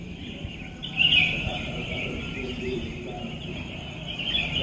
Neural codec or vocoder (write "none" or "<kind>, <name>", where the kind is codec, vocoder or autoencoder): vocoder, BigVGAN v2